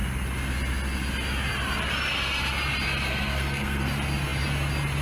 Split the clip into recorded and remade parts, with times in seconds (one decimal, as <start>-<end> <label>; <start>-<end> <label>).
0.0-3.1 recorded; 3.1-3.9 remade; 3.9-5.0 recorded